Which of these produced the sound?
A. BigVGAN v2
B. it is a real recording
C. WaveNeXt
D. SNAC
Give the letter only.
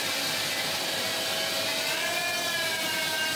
B